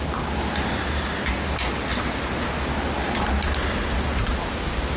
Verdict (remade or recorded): recorded